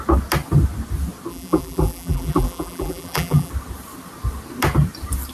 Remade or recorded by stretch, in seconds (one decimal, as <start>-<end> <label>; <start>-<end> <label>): 0.0-1.3 recorded; 1.3-3.5 remade; 3.5-5.3 recorded